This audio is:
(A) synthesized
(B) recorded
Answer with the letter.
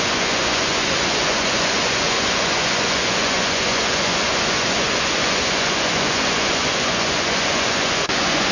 A